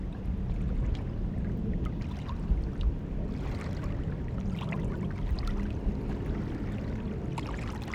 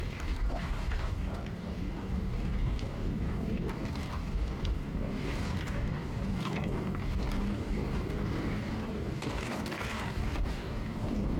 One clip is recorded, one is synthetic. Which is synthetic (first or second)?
second